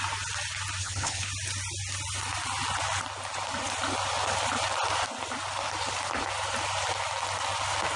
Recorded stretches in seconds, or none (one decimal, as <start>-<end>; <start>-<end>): 0.0-0.8; 1.3-8.0